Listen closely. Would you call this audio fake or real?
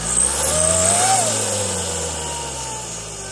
real